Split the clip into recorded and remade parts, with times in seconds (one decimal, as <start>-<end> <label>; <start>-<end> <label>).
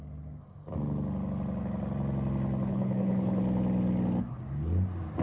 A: 0.0-2.7 recorded; 2.7-3.4 remade; 3.4-5.2 recorded